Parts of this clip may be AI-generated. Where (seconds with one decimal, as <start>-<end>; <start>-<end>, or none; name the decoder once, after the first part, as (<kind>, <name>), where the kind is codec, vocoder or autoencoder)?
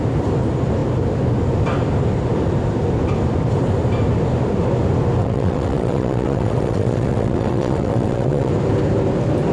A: 5.2-8.5 (vocoder, WaveNeXt)